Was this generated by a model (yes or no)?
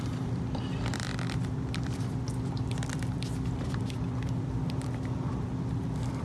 yes